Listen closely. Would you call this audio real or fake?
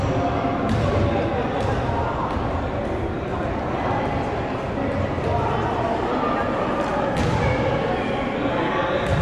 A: real